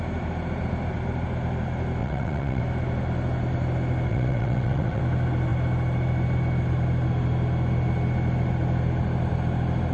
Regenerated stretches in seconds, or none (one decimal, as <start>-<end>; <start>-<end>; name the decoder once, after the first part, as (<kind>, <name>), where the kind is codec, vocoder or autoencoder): 2.0-2.6 (vocoder, WaveNeXt); 4.1-5.0